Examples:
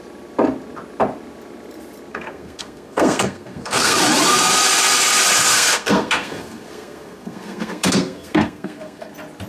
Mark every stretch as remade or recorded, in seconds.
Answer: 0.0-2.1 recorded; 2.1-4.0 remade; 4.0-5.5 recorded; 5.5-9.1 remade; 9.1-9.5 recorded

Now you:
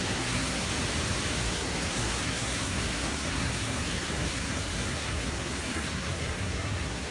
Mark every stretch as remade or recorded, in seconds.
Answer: 0.0-0.7 remade; 0.7-1.4 recorded; 1.4-7.1 remade

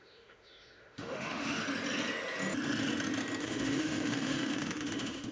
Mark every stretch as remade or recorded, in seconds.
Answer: 0.0-1.6 remade; 1.6-3.4 recorded; 3.4-5.3 remade

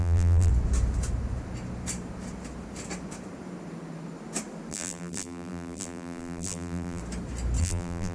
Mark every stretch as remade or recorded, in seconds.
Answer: 0.0-0.5 remade; 0.5-4.7 recorded; 4.7-7.0 remade; 7.0-7.6 recorded; 7.6-8.1 remade